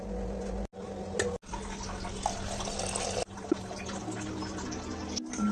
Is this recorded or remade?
recorded